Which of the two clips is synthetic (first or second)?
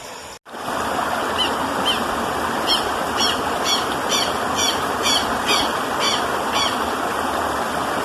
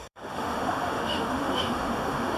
second